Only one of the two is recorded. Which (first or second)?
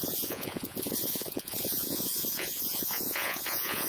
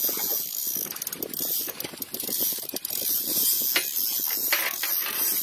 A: second